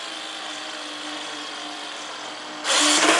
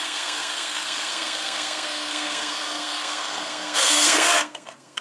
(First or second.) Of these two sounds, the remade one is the second